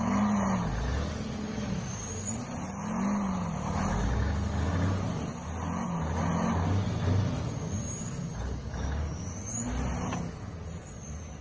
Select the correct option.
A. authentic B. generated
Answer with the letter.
A